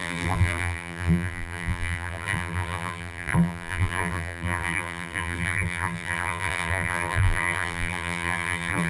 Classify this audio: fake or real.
fake